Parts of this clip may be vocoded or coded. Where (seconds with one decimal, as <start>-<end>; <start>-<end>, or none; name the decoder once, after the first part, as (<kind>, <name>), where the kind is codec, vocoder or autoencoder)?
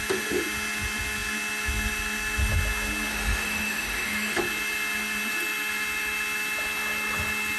3.1-4.4 (autoencoder, DAC-VAE)